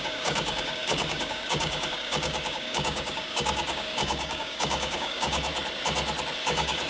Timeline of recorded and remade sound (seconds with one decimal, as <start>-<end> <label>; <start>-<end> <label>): 0.0-5.5 remade; 5.5-6.4 recorded; 6.4-6.9 remade